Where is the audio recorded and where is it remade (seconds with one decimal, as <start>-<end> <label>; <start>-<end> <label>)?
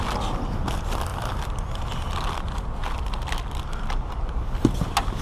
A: 0.0-5.2 recorded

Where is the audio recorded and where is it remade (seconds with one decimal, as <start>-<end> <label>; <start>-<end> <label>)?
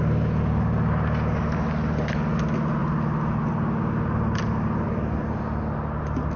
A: 0.0-6.4 recorded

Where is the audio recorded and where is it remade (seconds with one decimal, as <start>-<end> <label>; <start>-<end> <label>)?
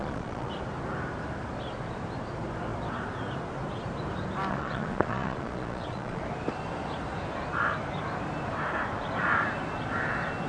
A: 0.0-0.5 remade; 0.5-4.5 recorded; 4.5-6.2 remade; 6.2-10.5 recorded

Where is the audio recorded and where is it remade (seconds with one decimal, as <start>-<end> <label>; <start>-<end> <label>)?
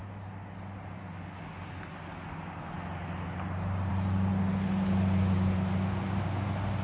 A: 0.0-6.8 recorded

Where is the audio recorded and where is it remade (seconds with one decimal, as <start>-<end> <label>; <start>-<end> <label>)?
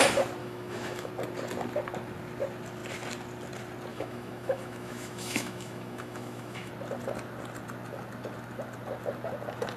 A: 0.0-0.4 recorded; 0.4-1.1 remade; 1.1-3.9 recorded; 3.9-6.7 remade; 6.7-9.8 recorded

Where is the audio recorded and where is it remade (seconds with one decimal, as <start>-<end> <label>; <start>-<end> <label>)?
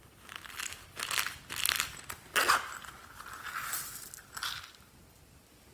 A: 0.0-5.7 recorded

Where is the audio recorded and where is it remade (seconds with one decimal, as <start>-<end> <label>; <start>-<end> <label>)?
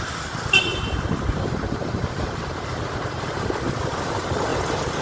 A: 0.0-0.7 recorded; 0.7-3.4 remade; 3.4-4.5 recorded; 4.5-5.0 remade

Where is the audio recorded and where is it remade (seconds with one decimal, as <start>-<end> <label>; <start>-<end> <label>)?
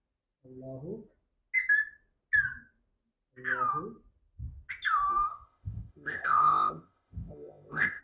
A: 0.0-5.3 recorded; 5.3-8.0 remade